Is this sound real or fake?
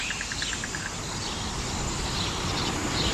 real